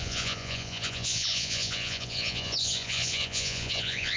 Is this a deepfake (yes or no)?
yes